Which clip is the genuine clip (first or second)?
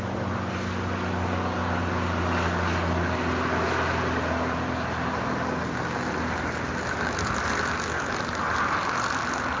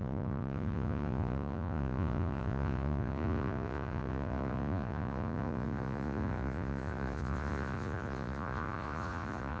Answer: first